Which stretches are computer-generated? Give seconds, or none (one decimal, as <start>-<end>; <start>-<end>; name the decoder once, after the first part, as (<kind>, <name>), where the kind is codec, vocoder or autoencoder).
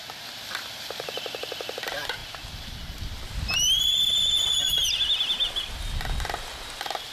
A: none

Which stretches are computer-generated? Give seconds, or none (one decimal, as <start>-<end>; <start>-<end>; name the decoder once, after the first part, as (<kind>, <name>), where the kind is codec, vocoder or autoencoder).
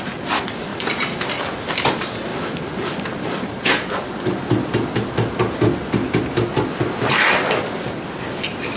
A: none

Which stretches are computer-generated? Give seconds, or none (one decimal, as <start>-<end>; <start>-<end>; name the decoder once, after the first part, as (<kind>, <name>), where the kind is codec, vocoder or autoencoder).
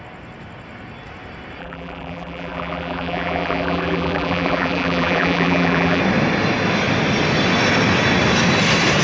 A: 1.6-6.0 (vocoder, BigVGAN v2)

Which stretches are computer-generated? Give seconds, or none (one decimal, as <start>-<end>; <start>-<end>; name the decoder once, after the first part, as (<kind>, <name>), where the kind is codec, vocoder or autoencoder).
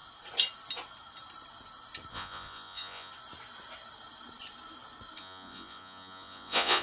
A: 2.1-3.1 (vocoder, Vocos); 5.2-6.8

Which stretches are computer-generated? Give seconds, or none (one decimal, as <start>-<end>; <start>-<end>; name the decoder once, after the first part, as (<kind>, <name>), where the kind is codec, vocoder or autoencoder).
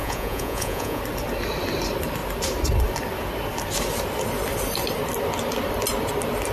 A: 0.0-1.0 (vocoder, Vocos)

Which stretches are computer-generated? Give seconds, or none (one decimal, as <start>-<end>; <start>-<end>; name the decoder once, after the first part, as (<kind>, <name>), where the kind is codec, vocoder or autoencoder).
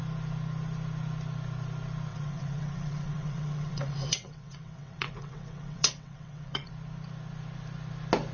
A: 2.1-6.7 (vocoder, WaveNeXt)